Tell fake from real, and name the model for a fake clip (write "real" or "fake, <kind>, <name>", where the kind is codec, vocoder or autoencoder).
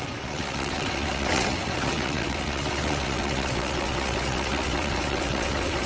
fake, vocoder, WaveNeXt